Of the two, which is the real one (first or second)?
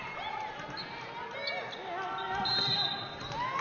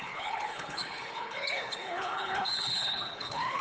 first